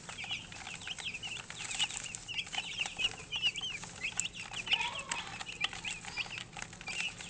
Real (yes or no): yes